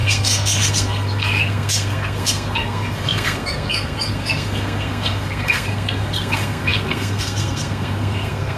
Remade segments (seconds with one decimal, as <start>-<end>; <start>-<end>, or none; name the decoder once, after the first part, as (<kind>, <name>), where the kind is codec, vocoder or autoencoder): 0.0-8.6 (codec, SNAC)